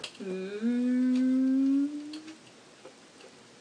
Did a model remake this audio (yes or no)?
no